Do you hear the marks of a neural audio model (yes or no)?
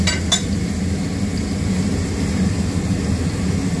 no